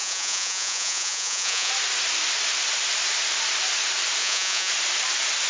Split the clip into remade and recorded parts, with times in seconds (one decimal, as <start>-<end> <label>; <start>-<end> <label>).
0.0-1.7 remade; 1.7-4.2 recorded; 4.2-4.7 remade; 4.7-5.5 recorded